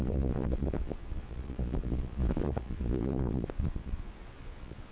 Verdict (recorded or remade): remade